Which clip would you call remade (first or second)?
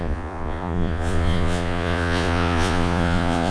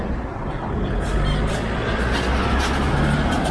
first